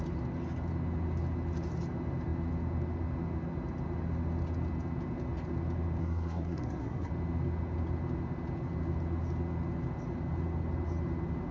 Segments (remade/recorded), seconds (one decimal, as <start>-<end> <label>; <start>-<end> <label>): 0.0-6.0 recorded; 6.0-7.1 remade; 7.1-11.5 recorded